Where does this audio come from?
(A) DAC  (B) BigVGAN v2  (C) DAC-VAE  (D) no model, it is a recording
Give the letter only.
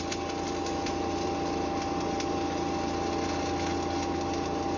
D